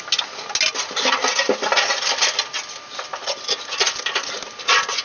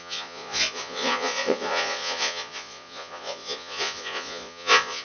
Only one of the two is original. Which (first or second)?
first